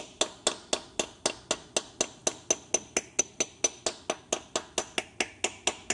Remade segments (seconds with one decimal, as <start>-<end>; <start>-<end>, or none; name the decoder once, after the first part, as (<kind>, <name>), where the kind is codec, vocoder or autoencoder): none